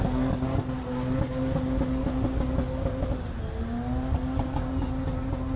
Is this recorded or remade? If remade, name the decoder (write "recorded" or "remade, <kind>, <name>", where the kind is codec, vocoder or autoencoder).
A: recorded